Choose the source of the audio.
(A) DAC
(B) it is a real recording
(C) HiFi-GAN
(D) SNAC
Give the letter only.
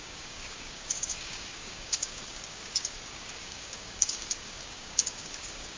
A